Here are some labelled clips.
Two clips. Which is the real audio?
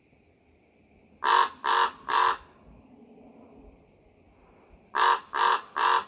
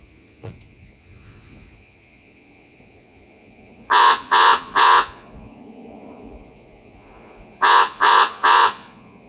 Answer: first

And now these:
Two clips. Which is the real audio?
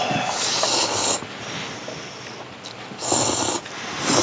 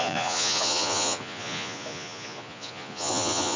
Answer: first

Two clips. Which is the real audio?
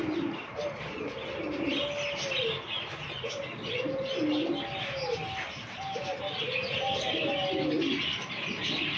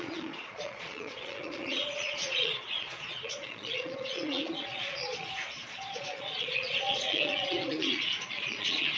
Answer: first